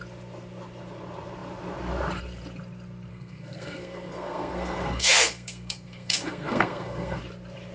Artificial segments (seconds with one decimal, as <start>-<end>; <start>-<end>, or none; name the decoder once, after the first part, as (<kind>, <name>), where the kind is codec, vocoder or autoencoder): 3.1-7.2 (codec, SNAC)